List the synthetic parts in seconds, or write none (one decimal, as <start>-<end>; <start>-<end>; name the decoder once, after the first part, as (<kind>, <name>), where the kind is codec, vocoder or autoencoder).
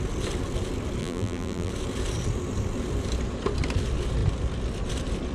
1.0-1.7 (vocoder, BigVGAN v2)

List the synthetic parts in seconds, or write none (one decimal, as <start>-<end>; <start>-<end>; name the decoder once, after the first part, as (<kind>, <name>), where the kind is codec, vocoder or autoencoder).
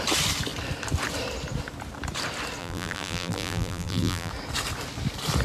2.6-4.3 (vocoder, BigVGAN v2)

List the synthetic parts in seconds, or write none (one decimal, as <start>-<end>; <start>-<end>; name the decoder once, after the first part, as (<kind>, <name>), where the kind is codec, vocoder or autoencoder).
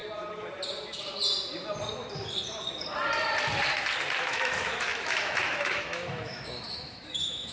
4.3-7.5 (autoencoder, DAC-VAE)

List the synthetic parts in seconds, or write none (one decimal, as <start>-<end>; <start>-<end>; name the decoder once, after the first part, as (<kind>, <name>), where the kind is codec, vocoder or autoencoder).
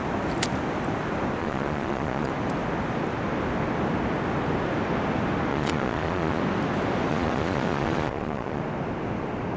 1.4-2.3 (vocoder, Vocos); 5.5-6.4; 7.1-8.6